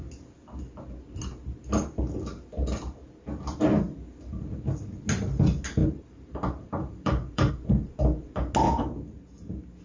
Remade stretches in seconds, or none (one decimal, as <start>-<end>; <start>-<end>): 5.8-7.5

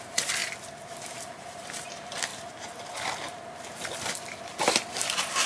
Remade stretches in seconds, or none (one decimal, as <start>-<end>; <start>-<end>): 0.0-0.4; 1.0-2.3; 4.5-5.5

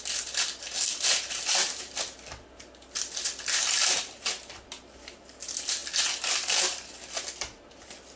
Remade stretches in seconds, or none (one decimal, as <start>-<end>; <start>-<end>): 0.0-8.2

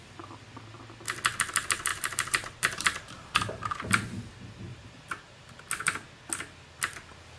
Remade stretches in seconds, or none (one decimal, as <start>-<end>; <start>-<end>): 1.9-3.8; 4.7-5.6

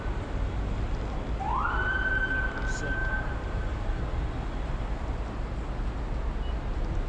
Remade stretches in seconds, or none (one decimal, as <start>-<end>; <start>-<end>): 3.0-4.0